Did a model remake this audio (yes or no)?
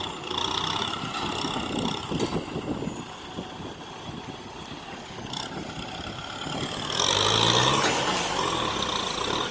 no